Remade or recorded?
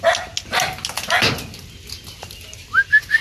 recorded